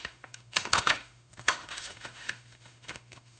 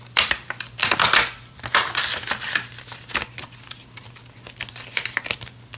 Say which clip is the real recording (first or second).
second